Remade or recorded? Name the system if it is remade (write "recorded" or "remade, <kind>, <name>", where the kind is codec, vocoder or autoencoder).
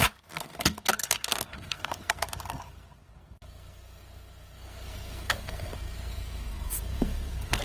remade, codec, SNAC